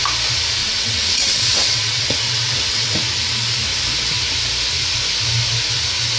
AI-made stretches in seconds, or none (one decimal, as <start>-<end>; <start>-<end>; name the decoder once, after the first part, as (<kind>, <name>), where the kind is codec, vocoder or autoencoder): 0.6-3.0 (vocoder, WaveNeXt)